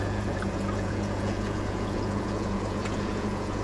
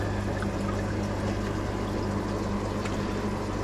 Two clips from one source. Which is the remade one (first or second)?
first